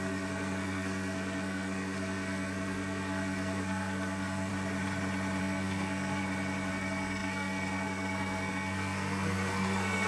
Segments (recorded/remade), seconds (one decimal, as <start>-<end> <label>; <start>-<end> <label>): 0.0-4.5 remade; 4.5-5.4 recorded; 5.4-6.2 remade; 6.2-6.7 recorded; 6.7-10.1 remade